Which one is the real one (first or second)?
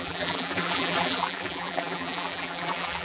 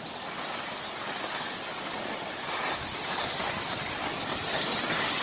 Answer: second